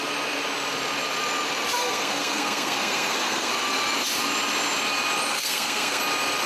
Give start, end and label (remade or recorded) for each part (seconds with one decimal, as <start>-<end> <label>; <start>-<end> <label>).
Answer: 0.0-1.8 recorded; 1.8-3.5 remade; 3.5-5.3 recorded; 5.3-6.0 remade; 6.0-6.5 recorded